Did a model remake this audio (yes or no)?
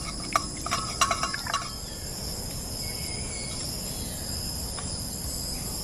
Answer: no